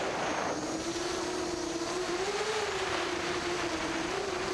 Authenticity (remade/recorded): remade